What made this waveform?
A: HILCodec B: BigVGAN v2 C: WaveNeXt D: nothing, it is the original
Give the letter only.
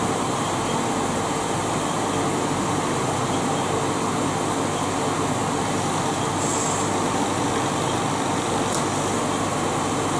D